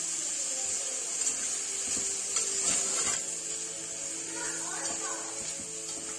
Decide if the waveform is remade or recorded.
recorded